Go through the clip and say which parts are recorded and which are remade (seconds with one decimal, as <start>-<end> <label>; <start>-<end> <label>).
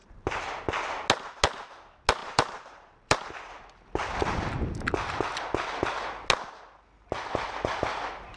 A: 0.0-0.6 remade; 0.6-2.2 recorded; 2.2-3.3 remade; 3.3-8.4 recorded